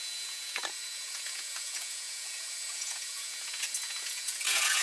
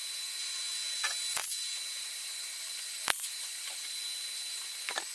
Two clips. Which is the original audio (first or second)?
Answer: second